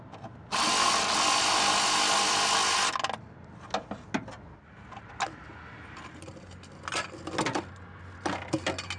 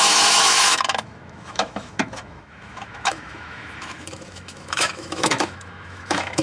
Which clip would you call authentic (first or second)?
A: first